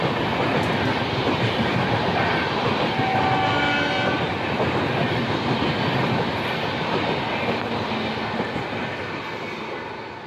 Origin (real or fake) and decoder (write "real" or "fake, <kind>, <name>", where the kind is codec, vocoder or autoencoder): real